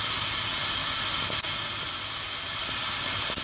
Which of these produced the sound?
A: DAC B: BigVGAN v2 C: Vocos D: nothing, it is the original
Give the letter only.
D